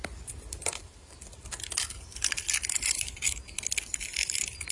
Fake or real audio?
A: fake